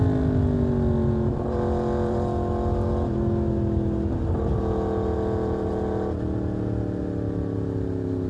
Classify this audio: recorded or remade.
recorded